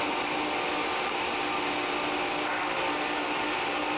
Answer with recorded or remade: recorded